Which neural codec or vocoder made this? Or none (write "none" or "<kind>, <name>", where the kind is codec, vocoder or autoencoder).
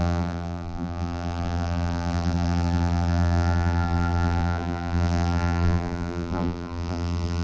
vocoder, BigVGAN v2